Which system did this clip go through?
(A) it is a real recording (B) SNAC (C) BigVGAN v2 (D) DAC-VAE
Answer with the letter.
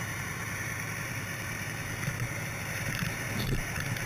C